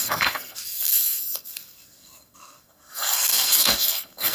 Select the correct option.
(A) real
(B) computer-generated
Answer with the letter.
B